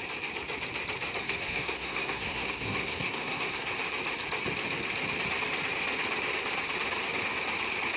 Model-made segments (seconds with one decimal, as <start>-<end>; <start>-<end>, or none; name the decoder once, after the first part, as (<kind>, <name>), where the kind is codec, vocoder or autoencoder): 1.2-3.7 (codec, SNAC)